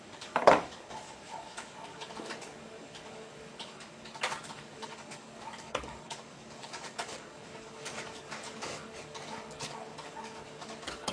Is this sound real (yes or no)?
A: no